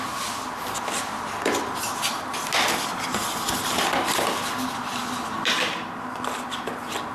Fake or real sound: real